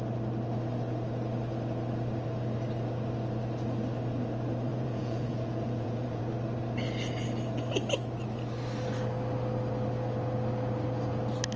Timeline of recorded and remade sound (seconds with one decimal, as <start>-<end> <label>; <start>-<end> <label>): 0.0-4.7 recorded; 4.7-6.2 remade; 6.2-11.6 recorded